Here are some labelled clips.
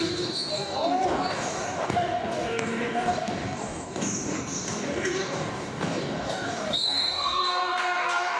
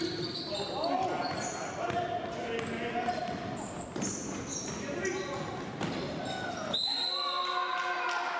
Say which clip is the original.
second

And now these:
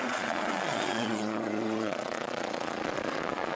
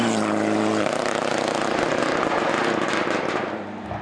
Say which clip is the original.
second